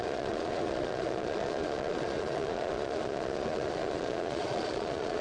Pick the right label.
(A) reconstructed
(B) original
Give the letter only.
A